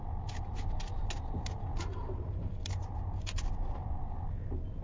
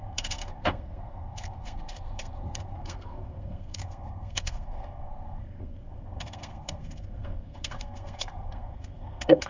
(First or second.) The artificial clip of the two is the second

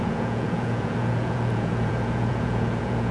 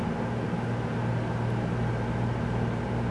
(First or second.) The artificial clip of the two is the first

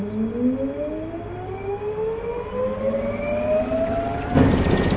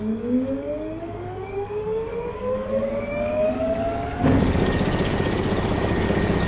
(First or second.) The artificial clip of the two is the second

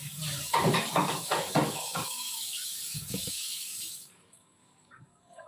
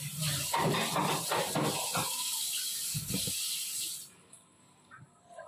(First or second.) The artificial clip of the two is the first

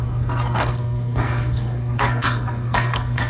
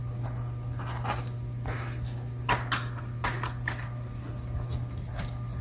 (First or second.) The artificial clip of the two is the first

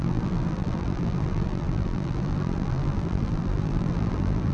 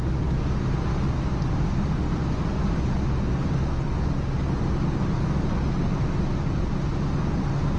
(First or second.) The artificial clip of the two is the first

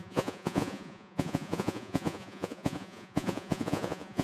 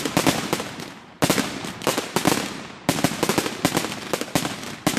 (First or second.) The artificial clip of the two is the first